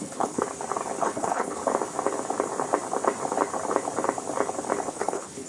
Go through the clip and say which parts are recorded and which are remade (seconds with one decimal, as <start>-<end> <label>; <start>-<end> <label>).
0.0-0.4 remade; 0.4-1.0 recorded; 1.0-1.6 remade; 1.6-4.9 recorded; 4.9-5.5 remade